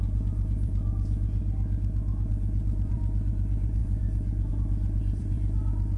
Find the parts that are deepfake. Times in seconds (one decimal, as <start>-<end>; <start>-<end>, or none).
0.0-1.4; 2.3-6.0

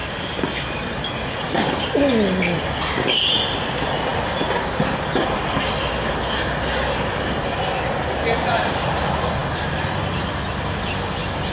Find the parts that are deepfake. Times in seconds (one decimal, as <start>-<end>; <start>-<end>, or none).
none

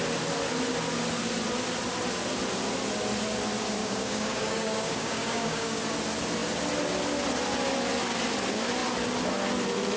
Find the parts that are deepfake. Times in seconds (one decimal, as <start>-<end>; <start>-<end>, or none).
3.8-5.8